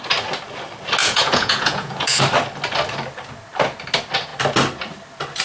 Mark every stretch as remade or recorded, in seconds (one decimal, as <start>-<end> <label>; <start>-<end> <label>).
0.0-1.0 recorded; 1.0-2.2 remade; 2.2-5.4 recorded